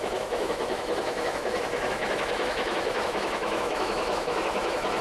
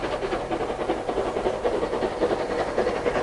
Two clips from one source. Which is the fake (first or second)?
first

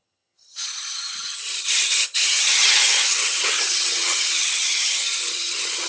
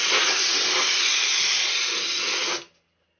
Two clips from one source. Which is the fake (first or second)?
first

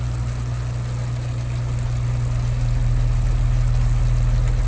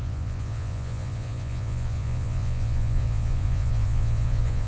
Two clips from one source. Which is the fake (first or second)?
second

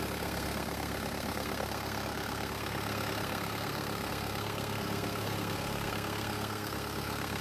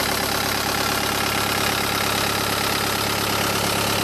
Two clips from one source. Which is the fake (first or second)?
first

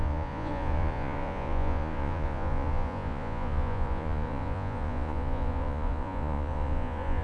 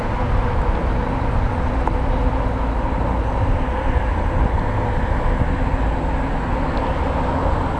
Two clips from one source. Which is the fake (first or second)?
first